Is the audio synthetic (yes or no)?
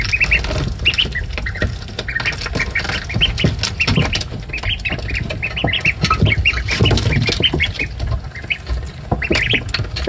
no